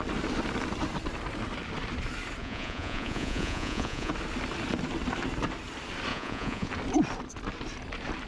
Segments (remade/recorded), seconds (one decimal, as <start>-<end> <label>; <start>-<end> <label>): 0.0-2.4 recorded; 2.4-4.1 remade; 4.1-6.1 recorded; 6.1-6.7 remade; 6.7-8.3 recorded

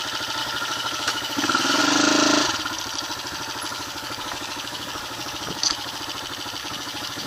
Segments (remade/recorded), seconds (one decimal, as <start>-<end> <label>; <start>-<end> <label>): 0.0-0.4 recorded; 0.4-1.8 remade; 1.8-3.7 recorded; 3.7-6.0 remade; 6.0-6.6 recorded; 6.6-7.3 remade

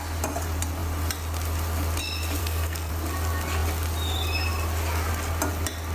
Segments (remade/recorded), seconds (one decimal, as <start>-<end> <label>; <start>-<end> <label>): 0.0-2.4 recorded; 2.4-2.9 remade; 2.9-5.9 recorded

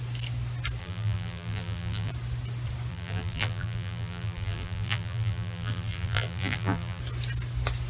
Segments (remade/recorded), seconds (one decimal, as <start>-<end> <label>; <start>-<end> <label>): 0.0-0.8 recorded; 0.8-2.1 remade; 2.1-2.9 recorded; 2.9-7.0 remade; 7.0-7.9 recorded